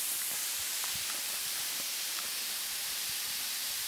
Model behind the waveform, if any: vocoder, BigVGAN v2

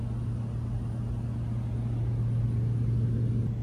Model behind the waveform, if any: none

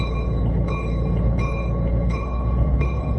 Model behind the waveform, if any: codec, HILCodec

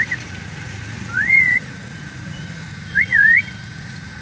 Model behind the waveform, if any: vocoder, Vocos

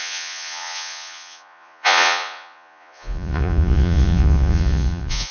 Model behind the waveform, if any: vocoder, Vocos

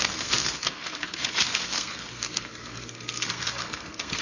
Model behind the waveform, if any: codec, SNAC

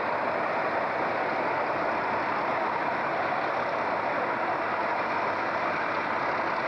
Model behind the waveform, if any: none